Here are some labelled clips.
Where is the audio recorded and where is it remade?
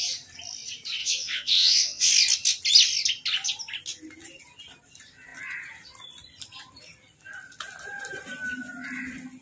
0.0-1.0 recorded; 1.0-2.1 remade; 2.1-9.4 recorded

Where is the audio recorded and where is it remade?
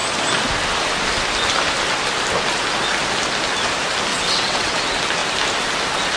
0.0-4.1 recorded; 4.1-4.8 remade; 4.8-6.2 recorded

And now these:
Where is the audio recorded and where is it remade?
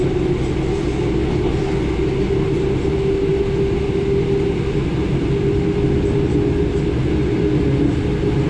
0.0-8.5 recorded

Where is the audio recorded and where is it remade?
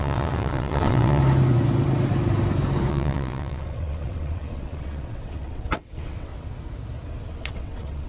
0.0-1.2 remade; 1.2-2.9 recorded; 2.9-6.3 remade; 6.3-7.4 recorded; 7.4-8.1 remade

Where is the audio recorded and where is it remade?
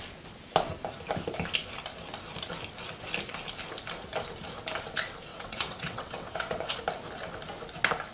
0.0-5.3 recorded; 5.3-6.7 remade; 6.7-8.1 recorded